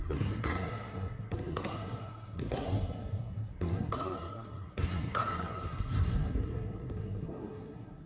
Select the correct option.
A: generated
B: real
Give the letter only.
A